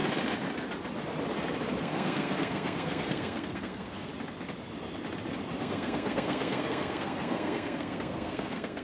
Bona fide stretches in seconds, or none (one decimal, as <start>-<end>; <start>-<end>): 0.0-1.8; 4.1-5.6

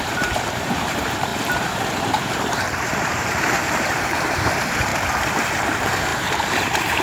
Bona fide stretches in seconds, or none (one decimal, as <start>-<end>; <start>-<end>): 4.9-5.5

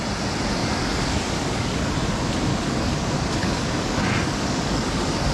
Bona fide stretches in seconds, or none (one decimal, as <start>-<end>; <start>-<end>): 0.0-0.6; 1.9-2.5

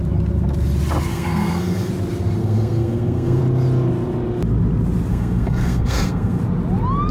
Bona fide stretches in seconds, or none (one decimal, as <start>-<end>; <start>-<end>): 0.0-1.1; 1.9-2.4; 3.4-5.1; 6.4-7.1

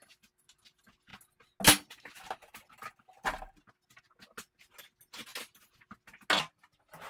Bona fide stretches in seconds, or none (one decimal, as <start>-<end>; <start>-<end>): 0.0-7.1

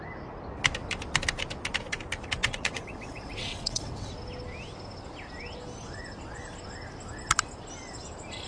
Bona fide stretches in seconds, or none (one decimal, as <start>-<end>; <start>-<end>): 0.0-2.4; 4.1-8.5

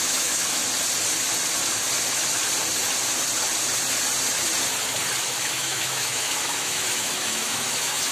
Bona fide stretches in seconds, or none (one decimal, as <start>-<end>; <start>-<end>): 0.6-5.2

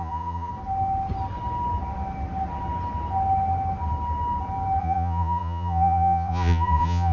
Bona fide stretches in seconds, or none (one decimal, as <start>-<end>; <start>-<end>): 0.5-4.8